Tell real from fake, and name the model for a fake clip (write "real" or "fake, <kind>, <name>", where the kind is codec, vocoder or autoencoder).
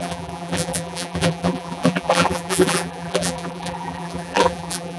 fake, vocoder, BigVGAN v2